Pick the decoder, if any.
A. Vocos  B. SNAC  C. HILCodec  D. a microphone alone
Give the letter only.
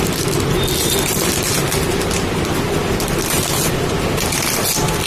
D